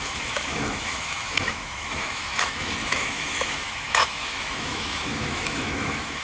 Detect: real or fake fake